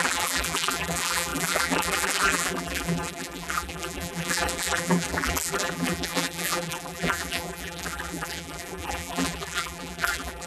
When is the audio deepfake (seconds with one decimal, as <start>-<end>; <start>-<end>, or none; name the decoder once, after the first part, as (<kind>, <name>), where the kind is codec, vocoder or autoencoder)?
0.0-10.5 (vocoder, BigVGAN v2)